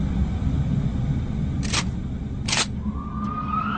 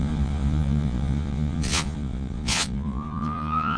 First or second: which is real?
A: first